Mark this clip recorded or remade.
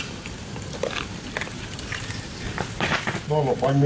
recorded